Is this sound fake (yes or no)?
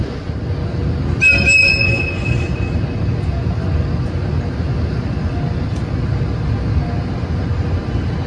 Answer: no